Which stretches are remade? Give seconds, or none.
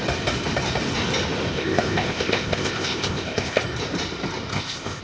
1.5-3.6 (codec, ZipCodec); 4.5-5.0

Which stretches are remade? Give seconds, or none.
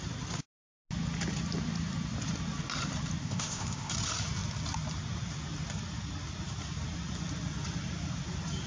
3.2-3.9 (codec, ZipCodec)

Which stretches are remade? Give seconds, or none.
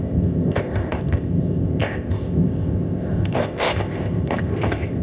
0.0-5.0 (codec, ZipCodec)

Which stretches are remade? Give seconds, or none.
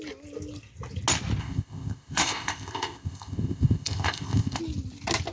1.4-4.6 (codec, ZipCodec)